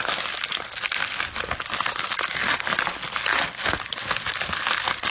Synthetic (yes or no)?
no